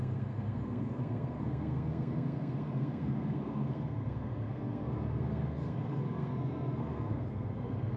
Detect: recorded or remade remade